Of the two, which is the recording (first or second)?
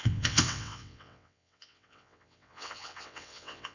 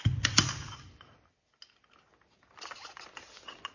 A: second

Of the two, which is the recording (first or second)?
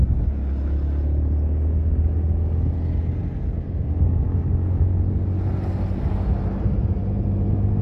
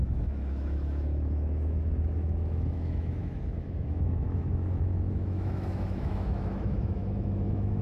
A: first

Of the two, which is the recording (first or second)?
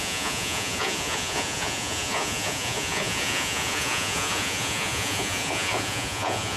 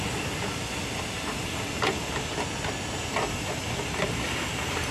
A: second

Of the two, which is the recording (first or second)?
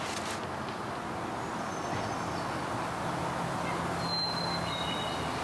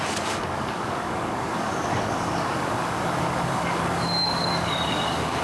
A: first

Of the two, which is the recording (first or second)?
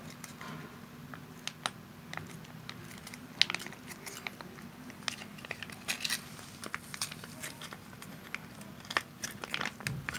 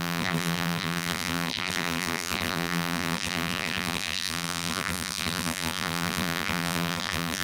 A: first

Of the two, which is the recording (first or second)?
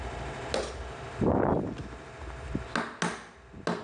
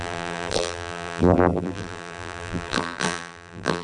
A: first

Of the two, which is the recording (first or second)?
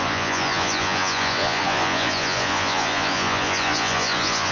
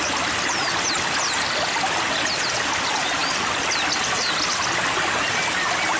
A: second